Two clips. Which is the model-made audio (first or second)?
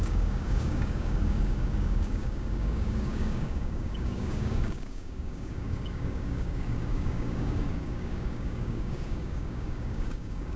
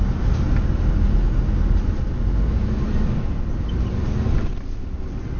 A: first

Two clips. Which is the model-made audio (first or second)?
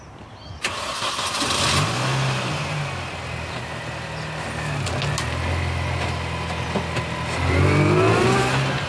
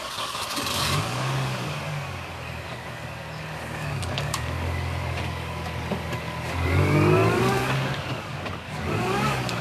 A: second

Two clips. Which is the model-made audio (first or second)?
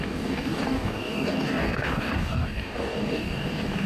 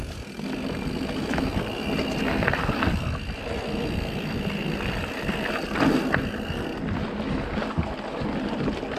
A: first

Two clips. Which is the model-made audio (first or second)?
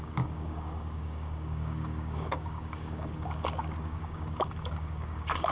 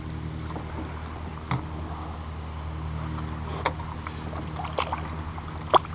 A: first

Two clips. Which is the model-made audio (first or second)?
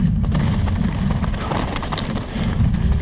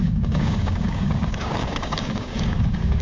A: second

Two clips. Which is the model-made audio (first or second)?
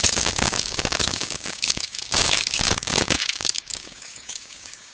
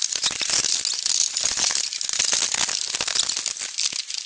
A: first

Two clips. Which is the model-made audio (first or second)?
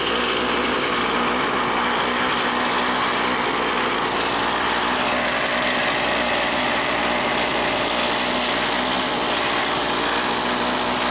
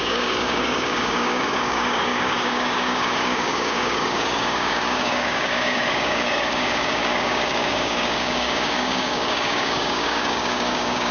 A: second